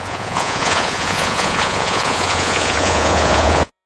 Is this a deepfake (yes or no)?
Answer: yes